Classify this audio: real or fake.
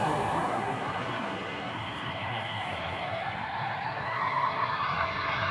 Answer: fake